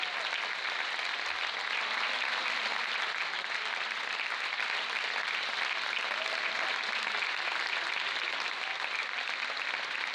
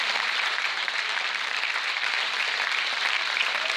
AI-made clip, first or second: second